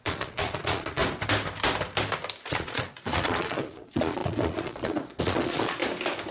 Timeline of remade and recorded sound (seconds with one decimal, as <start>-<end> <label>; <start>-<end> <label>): 0.0-1.0 remade; 1.0-2.5 recorded; 2.5-5.8 remade; 5.8-6.3 recorded